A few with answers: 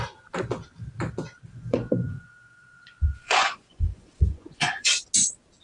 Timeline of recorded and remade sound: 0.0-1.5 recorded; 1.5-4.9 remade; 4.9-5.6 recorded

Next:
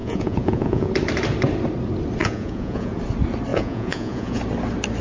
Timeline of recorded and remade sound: 0.0-0.9 remade; 0.9-2.2 recorded; 2.2-2.9 remade; 2.9-3.5 recorded; 3.5-4.4 remade; 4.4-5.0 recorded

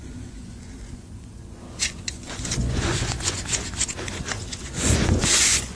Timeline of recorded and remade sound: 0.0-5.8 remade